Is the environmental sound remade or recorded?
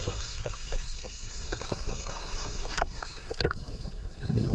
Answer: remade